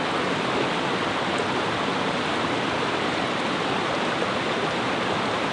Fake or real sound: real